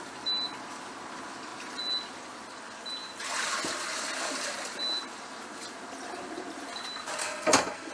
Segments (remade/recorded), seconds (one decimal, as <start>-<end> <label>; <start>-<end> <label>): 0.0-7.2 recorded; 7.2-7.9 remade